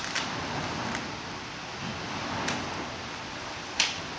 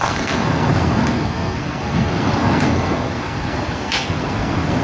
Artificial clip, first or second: second